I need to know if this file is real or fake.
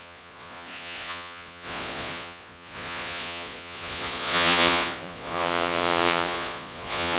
fake